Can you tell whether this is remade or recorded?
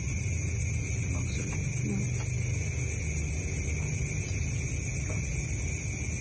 recorded